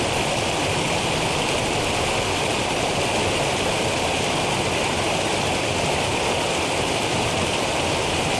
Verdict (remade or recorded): recorded